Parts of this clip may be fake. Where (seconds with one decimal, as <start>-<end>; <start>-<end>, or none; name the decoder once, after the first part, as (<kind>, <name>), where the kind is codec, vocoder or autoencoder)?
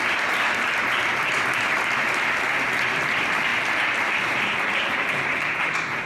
none